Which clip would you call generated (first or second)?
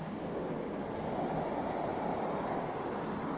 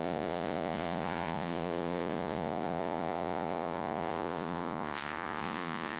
second